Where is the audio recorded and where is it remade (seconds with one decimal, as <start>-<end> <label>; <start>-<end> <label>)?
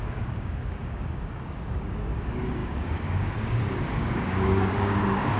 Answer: 0.0-5.4 remade